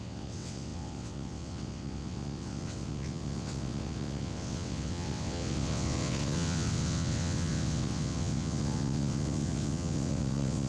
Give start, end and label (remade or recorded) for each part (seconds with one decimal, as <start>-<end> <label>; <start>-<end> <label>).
0.0-10.7 remade